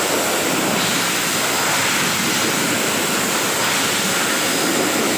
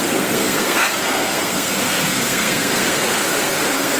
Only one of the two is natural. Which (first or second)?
first